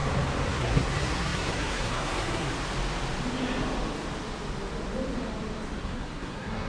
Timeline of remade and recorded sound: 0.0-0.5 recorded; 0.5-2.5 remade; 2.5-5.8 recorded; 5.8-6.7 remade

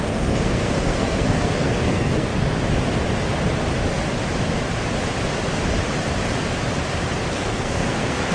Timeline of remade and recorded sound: 0.0-2.3 remade; 2.3-7.3 recorded; 7.3-8.3 remade

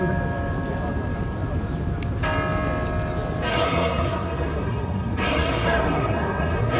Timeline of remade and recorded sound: 0.0-3.5 recorded; 3.5-6.8 remade

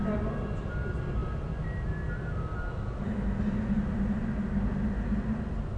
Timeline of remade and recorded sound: 0.0-5.8 recorded

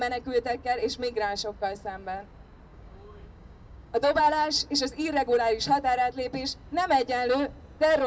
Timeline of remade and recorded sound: 0.0-2.7 recorded; 2.7-4.2 remade; 4.2-8.1 recorded

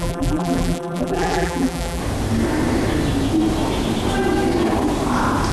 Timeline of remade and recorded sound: 0.0-2.0 remade; 2.0-5.5 recorded